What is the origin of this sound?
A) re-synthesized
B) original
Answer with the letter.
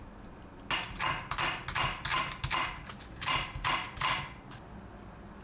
B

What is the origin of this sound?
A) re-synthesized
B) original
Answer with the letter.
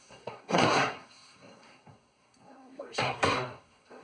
A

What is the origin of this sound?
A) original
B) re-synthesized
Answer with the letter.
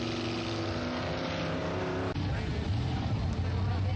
A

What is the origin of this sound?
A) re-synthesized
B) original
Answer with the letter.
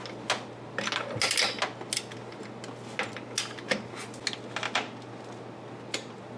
B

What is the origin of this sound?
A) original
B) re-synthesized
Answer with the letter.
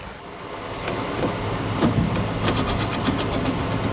A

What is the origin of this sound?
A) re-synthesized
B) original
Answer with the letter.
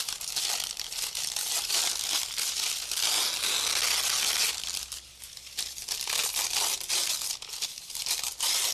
B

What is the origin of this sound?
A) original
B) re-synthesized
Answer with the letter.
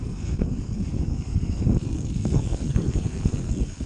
B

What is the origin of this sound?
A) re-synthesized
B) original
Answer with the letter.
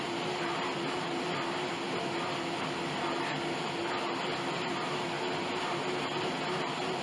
B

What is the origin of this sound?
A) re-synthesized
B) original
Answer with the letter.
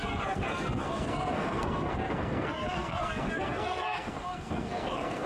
A